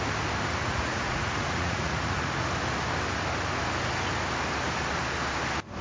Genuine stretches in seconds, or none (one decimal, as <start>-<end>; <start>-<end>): 0.0-0.6; 2.5-5.8